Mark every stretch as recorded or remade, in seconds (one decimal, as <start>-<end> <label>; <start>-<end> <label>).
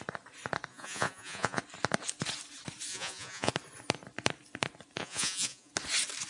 0.0-0.7 recorded; 0.7-1.6 remade; 1.6-2.9 recorded; 2.9-3.5 remade; 3.5-5.0 recorded; 5.0-5.7 remade; 5.7-6.3 recorded